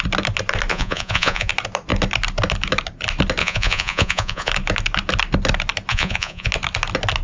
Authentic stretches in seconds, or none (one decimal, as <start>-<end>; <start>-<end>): 0.0-0.7; 1.5-3.4; 4.5-5.9; 6.5-7.2